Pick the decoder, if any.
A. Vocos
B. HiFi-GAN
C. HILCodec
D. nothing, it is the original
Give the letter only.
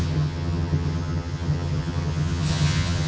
B